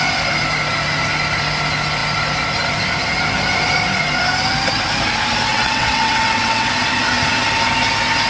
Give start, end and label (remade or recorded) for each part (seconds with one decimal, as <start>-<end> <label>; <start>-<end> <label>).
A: 0.0-5.5 recorded; 5.5-6.7 remade; 6.7-8.3 recorded